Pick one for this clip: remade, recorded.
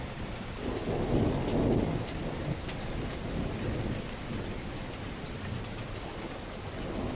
recorded